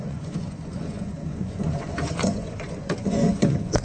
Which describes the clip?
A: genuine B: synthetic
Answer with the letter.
B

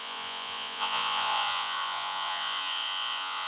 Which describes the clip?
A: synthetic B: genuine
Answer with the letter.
A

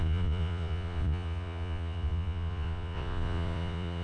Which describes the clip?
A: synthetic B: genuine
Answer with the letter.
A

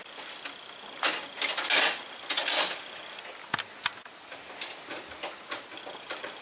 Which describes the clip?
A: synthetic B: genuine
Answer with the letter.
B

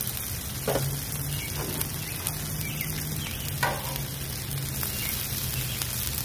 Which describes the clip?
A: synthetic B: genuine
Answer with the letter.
B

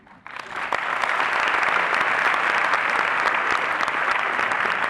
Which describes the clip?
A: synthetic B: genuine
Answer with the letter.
B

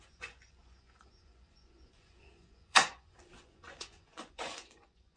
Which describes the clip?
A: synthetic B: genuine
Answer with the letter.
A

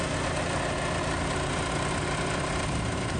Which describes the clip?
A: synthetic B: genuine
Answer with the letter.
B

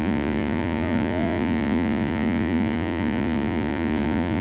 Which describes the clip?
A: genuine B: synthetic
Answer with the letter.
B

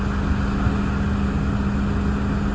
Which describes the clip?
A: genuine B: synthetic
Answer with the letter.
A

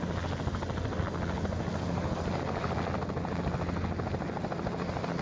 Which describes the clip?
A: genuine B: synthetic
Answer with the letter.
A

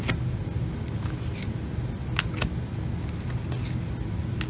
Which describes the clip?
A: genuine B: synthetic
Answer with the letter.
A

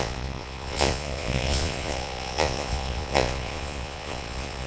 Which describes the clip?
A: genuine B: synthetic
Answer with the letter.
B